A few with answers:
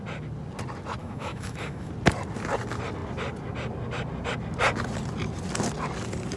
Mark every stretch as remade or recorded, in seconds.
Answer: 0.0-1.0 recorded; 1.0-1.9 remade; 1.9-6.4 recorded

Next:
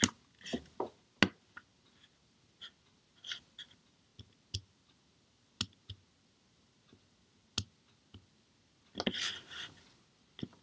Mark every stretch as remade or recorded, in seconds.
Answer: 0.0-10.6 recorded

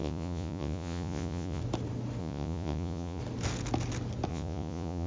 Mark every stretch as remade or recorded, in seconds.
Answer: 0.0-1.6 remade; 1.6-2.2 recorded; 2.2-3.2 remade; 3.2-4.3 recorded; 4.3-5.1 remade

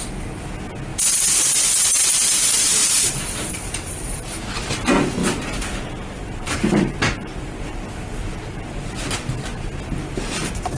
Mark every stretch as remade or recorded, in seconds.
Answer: 0.0-0.9 recorded; 0.9-1.5 remade; 1.5-2.8 recorded; 2.8-4.4 remade; 4.4-5.2 recorded; 5.2-7.8 remade; 7.8-10.8 recorded